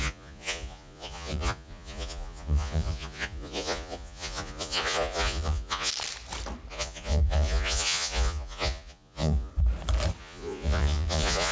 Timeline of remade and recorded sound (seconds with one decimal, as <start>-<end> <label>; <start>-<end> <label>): 0.0-5.9 remade; 5.9-6.7 recorded; 6.7-9.5 remade; 9.5-10.2 recorded; 10.2-11.5 remade